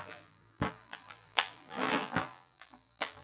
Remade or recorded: remade